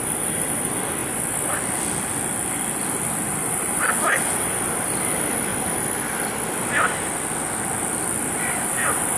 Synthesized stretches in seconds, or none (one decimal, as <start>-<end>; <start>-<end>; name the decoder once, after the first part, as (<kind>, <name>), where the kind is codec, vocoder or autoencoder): none